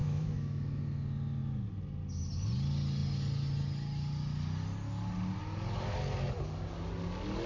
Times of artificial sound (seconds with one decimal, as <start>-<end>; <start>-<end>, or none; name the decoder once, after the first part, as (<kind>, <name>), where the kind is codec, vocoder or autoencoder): 0.0-0.8 (autoencoder, DAC-VAE)